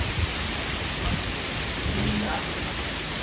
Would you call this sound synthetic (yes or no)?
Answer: no